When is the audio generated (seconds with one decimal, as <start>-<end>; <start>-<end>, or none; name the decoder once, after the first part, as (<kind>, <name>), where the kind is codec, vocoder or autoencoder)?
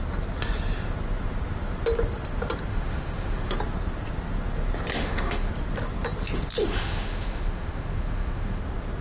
2.7-3.6 (autoencoder, DAC-VAE); 5.0-5.5; 6.6-8.6